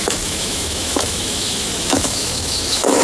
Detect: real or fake fake